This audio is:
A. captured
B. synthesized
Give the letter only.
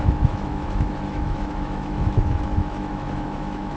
B